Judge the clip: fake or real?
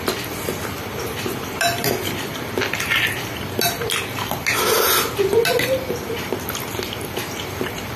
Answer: real